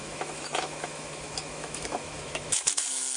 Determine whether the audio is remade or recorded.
remade